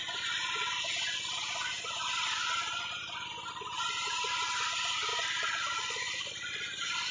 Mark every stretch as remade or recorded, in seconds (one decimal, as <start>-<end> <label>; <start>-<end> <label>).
0.0-5.1 recorded; 5.1-7.1 remade